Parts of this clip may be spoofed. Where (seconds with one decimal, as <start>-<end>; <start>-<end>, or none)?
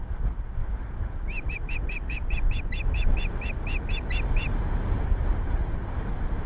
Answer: 0.0-0.6; 1.5-3.1